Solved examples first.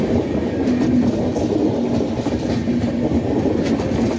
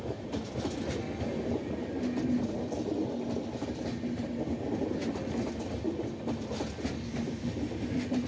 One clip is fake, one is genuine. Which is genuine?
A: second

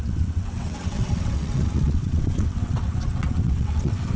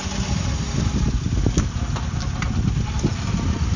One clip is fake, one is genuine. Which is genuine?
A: second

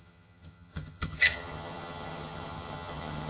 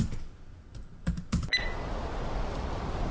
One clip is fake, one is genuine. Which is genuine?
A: second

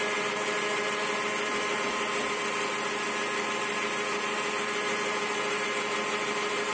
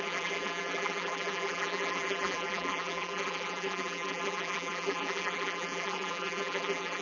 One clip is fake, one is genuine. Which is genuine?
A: first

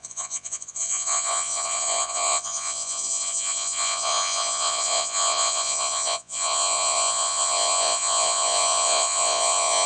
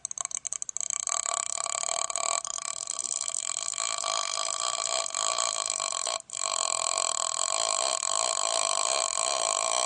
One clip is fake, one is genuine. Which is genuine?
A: second